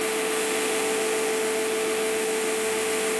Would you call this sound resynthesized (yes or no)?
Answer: yes